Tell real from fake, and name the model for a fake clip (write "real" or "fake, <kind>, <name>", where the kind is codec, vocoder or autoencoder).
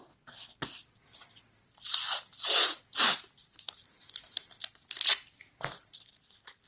real